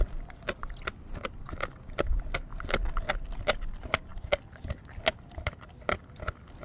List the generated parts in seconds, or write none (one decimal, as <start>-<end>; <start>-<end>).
none